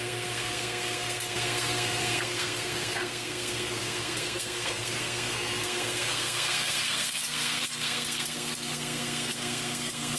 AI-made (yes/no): yes